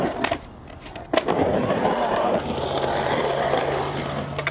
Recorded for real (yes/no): yes